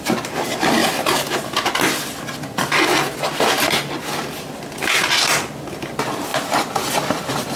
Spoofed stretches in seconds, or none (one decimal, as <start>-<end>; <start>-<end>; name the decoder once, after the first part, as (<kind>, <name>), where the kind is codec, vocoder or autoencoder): 6.3-7.6 (vocoder, BigVGAN v2)

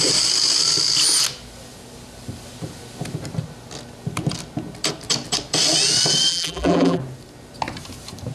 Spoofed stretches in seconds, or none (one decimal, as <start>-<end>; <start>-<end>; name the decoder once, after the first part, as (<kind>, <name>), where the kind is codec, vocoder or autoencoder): 6.3-7.0 (vocoder, BigVGAN v2)

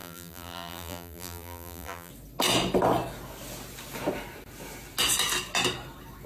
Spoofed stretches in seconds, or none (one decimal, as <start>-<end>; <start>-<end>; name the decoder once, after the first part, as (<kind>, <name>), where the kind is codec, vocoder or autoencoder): 0.0-2.1 (vocoder, BigVGAN v2)

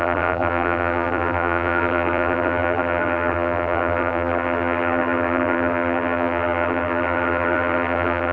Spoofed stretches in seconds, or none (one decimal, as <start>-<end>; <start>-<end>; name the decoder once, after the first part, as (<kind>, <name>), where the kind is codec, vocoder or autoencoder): 0.0-8.3 (vocoder, BigVGAN v2)

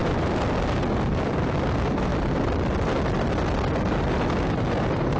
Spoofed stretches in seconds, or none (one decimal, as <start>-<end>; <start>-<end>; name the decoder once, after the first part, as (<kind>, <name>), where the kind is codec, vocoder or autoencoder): 0.0-2.1 (vocoder, BigVGAN v2); 4.0-5.2